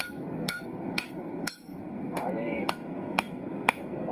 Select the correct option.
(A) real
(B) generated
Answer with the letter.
B